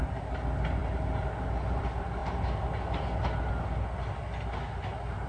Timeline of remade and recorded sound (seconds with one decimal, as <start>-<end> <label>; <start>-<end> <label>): 0.0-5.3 recorded